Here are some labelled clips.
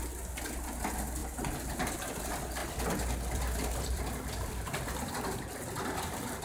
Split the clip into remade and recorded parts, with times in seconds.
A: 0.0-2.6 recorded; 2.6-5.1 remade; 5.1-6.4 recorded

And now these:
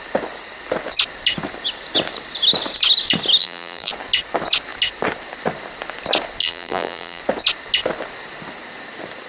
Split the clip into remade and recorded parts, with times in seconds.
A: 0.0-3.4 recorded; 3.4-3.9 remade; 3.9-6.4 recorded; 6.4-7.2 remade; 7.2-9.3 recorded

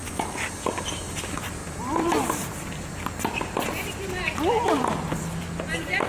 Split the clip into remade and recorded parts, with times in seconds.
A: 0.0-1.6 recorded; 1.6-3.9 remade; 3.9-6.1 recorded

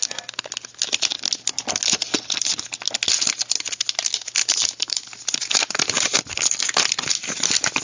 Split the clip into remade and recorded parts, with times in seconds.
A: 0.0-4.4 recorded; 4.4-6.2 remade; 6.2-7.8 recorded